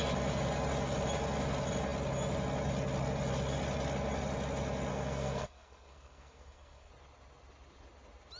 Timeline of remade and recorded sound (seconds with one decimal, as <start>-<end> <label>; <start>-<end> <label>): 0.0-4.9 recorded; 4.9-6.9 remade; 6.9-8.4 recorded